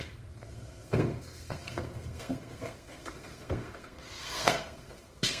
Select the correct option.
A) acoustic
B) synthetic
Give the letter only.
B